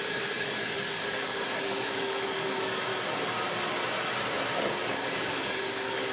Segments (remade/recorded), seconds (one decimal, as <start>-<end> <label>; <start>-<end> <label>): 0.0-2.9 remade; 2.9-4.9 recorded; 4.9-6.1 remade